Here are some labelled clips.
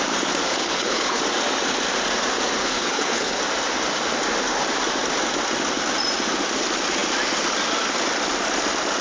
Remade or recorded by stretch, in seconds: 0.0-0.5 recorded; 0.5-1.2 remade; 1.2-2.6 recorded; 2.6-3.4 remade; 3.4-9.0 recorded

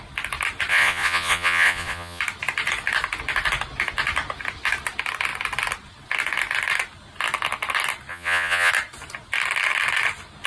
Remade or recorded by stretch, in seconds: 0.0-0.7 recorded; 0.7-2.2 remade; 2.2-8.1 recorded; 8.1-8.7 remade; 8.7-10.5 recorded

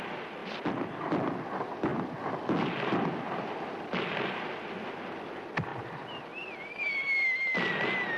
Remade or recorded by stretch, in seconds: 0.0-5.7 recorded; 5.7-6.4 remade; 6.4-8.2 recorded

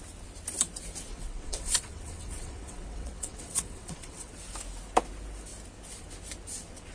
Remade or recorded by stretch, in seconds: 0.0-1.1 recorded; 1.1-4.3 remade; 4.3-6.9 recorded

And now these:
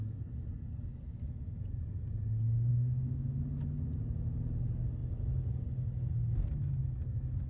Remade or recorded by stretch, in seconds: 0.0-2.7 recorded; 2.7-3.4 remade; 3.4-7.5 recorded